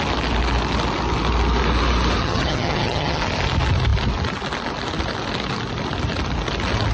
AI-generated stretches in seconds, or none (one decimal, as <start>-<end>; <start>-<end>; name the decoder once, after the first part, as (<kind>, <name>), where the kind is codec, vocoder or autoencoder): 2.2-3.2 (vocoder, HiFi-GAN)